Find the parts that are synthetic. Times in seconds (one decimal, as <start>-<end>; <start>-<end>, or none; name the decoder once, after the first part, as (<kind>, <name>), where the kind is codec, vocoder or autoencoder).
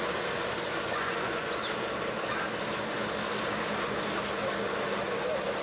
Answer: 0.9-1.5 (vocoder, Vocos)